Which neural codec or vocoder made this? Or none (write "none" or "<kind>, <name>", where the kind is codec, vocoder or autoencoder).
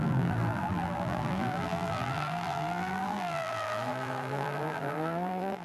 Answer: vocoder, BigVGAN v2